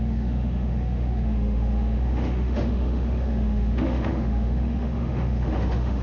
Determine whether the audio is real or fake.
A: fake